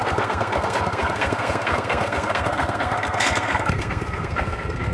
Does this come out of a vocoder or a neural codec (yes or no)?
yes